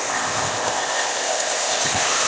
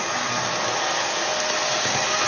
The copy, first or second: first